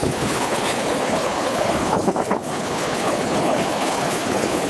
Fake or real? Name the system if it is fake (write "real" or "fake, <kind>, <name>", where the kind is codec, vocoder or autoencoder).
fake, codec, HILCodec